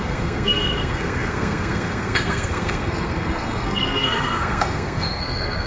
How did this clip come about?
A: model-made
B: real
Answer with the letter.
A